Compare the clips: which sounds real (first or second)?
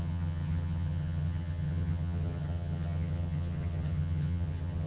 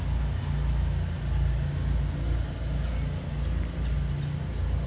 second